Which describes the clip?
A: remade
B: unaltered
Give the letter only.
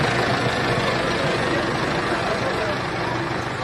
A